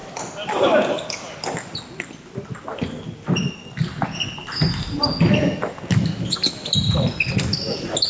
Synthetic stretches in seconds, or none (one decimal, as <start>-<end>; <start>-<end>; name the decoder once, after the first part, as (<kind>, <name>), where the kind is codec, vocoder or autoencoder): none